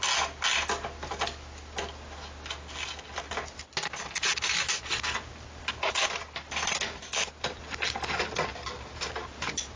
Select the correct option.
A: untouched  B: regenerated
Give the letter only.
A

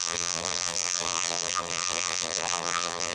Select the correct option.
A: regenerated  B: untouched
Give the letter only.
A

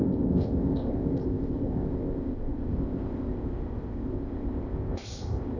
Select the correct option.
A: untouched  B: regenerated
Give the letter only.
B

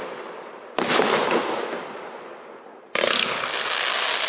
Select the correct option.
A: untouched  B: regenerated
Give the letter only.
A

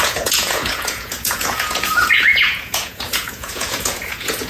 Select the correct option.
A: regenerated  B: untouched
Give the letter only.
A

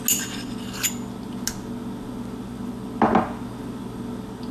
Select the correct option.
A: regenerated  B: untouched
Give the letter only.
B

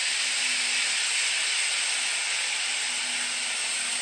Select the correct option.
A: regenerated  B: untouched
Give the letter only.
B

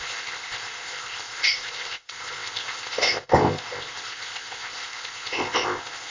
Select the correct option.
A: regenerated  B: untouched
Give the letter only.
A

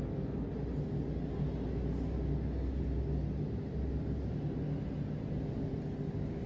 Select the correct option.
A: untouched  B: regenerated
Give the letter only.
A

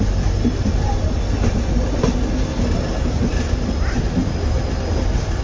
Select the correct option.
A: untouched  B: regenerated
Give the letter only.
A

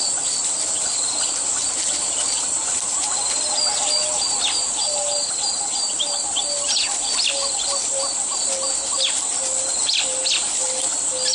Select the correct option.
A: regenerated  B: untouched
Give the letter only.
B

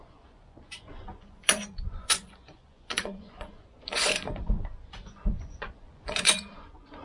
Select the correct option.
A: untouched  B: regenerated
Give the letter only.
B